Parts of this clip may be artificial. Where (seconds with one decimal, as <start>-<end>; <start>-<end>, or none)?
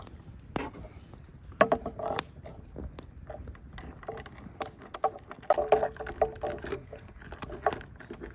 6.7-7.2